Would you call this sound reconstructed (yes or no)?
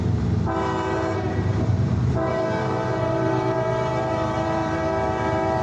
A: yes